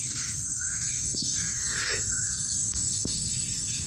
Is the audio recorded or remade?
remade